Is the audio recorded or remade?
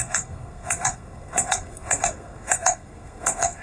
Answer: remade